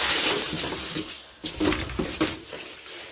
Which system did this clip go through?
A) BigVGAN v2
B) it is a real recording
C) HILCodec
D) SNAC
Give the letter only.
A